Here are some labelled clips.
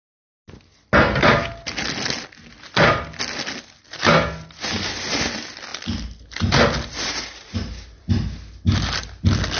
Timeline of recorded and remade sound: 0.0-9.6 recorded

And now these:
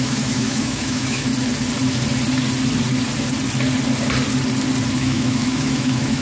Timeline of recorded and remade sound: 0.0-1.3 remade; 1.3-4.9 recorded; 4.9-6.2 remade

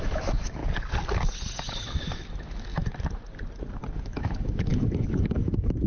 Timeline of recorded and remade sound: 0.0-0.6 remade; 0.6-1.7 recorded; 1.7-2.8 remade; 2.8-3.9 recorded; 3.9-5.9 remade

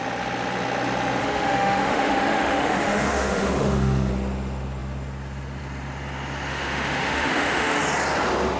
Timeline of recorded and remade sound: 0.0-1.2 recorded; 1.2-4.1 remade; 4.1-6.5 recorded; 6.5-7.8 remade; 7.8-8.6 recorded